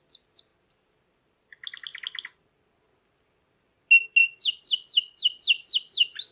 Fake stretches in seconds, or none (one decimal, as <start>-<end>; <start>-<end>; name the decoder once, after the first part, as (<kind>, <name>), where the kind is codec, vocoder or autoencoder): none